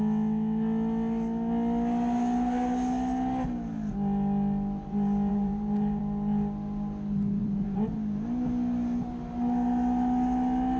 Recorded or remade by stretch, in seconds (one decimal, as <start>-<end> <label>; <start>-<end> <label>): 0.0-5.3 recorded; 5.3-6.0 remade; 6.0-7.4 recorded; 7.4-7.9 remade; 7.9-10.8 recorded